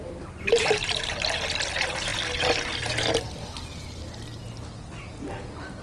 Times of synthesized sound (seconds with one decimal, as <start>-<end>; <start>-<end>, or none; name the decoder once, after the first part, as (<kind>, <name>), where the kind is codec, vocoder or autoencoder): none